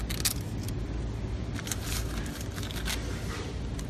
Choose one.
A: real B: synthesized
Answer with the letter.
A